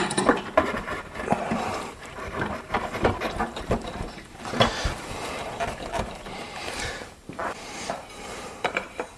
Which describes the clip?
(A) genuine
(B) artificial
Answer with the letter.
B